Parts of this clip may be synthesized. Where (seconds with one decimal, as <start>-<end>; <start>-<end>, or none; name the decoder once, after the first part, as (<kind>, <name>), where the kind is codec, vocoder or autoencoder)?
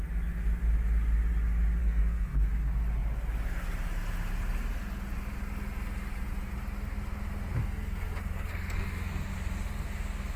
1.8-2.5 (codec, SNAC); 7.6-9.3